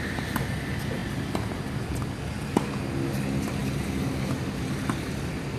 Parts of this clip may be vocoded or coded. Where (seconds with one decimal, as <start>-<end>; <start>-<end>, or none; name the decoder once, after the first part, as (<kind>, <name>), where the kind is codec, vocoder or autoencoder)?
none